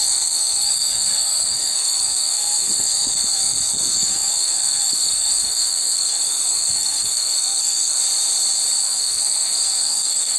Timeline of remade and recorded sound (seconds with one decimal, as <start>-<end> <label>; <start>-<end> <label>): 0.0-8.0 remade; 8.0-8.8 recorded; 8.8-10.4 remade